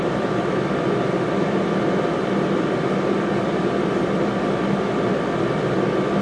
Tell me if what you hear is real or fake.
fake